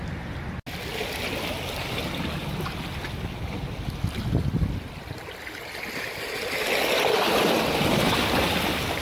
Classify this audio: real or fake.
real